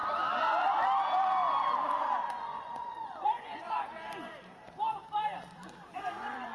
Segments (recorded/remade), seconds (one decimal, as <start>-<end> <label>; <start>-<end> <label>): 0.0-2.3 recorded; 2.3-3.9 remade; 3.9-6.0 recorded; 6.0-6.5 remade